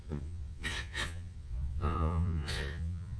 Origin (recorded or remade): remade